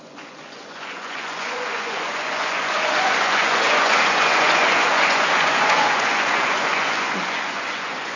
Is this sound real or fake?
fake